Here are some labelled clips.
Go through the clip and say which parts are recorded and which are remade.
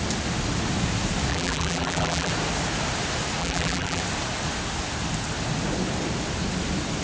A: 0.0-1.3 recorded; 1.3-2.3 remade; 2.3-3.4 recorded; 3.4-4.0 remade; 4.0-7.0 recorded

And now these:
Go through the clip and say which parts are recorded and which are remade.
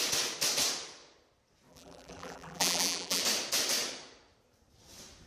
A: 0.0-1.7 recorded; 1.7-3.2 remade; 3.2-5.3 recorded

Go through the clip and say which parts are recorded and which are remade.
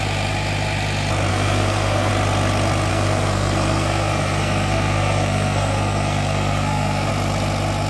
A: 0.0-1.3 recorded; 1.3-2.1 remade; 2.1-2.9 recorded; 2.9-7.1 remade; 7.1-7.9 recorded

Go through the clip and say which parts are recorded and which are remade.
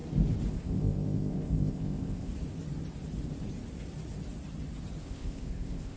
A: 0.0-0.5 recorded; 0.5-2.3 remade; 2.3-5.0 recorded; 5.0-6.0 remade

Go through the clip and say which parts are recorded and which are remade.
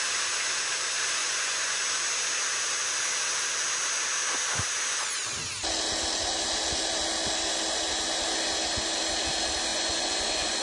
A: 0.0-1.2 recorded; 1.2-1.8 remade; 1.8-9.7 recorded; 9.7-10.6 remade